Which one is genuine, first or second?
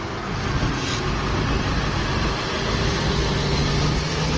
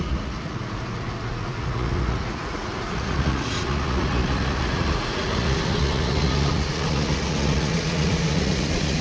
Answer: first